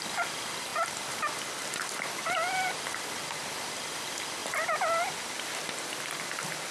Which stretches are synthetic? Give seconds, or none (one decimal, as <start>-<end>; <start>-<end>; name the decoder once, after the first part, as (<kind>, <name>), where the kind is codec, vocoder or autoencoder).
none